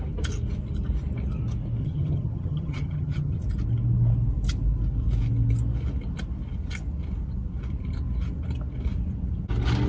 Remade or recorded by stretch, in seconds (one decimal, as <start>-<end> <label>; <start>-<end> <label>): 0.0-1.8 recorded; 1.8-3.4 remade; 3.4-9.9 recorded